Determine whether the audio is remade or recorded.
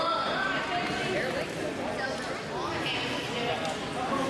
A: recorded